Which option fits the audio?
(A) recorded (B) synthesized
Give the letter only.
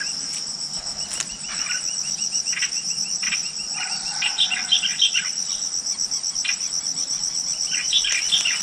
A